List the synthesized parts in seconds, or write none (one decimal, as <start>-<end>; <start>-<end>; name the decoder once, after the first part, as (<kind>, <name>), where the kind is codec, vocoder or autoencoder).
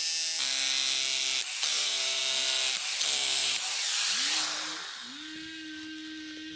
1.7-2.2 (vocoder, BigVGAN v2); 3.4-4.3